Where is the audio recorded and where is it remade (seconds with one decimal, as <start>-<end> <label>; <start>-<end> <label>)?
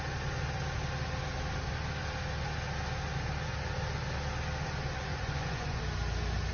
0.0-5.1 recorded; 5.1-5.8 remade; 5.8-6.5 recorded